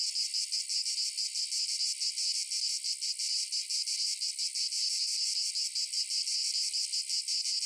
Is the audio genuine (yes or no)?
yes